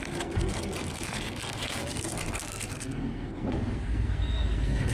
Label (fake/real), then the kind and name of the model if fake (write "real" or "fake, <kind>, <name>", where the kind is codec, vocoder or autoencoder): fake, codec, SNAC